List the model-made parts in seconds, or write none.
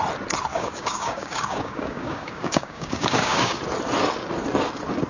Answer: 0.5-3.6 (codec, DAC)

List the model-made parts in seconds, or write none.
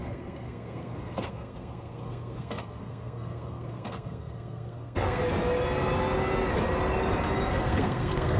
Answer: 0.0-5.2 (codec, SNAC); 7.5-8.4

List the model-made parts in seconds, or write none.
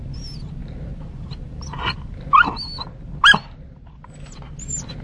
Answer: none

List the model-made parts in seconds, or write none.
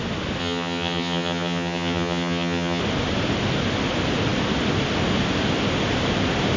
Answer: 0.4-2.8 (vocoder, HiFi-GAN)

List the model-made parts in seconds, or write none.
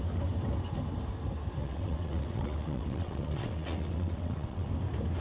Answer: 1.6-4.7 (vocoder, WaveNeXt)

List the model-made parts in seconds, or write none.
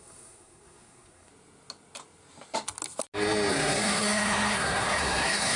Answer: 0.0-1.3 (codec, SNAC); 3.5-5.6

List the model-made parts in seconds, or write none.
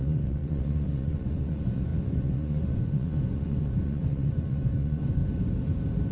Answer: 0.0-5.2 (vocoder, Vocos)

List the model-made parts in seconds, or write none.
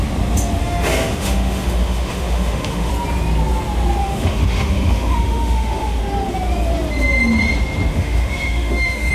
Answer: 0.6-2.9 (autoencoder, DAC-VAE); 4.0-6.0; 7.9-9.1